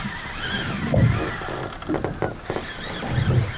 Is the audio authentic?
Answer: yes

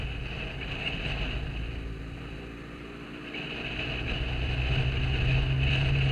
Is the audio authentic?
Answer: yes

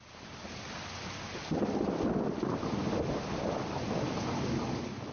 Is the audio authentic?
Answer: yes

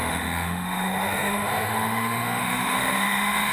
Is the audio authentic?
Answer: no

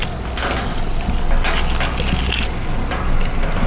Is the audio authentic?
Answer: yes